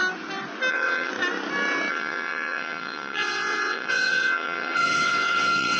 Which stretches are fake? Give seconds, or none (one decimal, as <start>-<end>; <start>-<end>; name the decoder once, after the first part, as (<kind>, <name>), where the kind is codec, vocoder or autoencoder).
0.7-1.1 (vocoder, WaveNeXt); 1.9-5.8